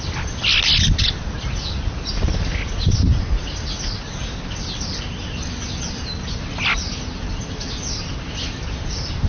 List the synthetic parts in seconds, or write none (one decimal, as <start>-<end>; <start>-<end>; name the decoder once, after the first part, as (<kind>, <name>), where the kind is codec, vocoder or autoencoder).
none